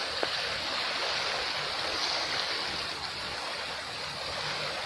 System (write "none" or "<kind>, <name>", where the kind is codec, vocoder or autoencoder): none